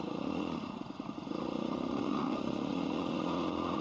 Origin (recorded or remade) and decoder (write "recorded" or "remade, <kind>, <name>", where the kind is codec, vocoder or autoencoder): remade, vocoder, Vocos